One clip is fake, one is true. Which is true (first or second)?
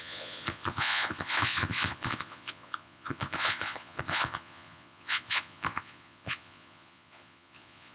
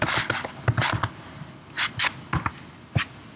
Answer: second